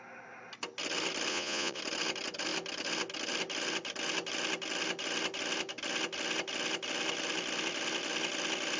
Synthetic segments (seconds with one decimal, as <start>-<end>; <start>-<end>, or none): 1.3-1.8